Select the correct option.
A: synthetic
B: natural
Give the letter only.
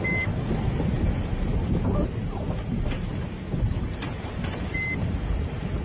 B